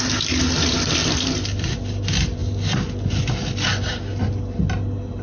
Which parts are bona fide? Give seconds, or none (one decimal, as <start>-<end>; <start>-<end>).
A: 0.0-5.2